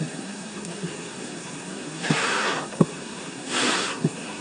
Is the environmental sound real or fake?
fake